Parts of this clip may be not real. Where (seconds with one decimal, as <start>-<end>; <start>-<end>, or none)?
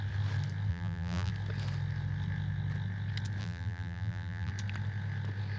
0.7-1.3; 3.4-4.5